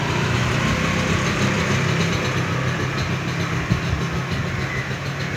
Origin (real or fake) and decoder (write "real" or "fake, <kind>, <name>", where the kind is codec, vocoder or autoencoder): real